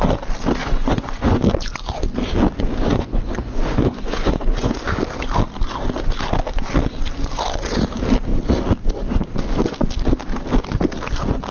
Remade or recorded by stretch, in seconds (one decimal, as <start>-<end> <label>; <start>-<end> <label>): 0.0-0.6 recorded; 0.6-1.4 remade; 1.4-2.9 recorded; 2.9-4.8 remade; 4.8-11.5 recorded